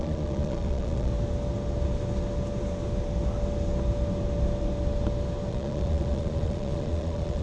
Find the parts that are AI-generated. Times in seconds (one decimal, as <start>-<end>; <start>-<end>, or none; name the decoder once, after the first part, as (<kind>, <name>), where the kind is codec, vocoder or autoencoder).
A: 0.0-1.1 (vocoder, Vocos); 5.5-7.4